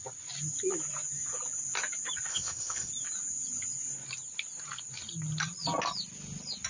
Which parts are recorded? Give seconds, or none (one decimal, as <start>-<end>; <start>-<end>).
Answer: 0.0-2.3; 2.9-6.7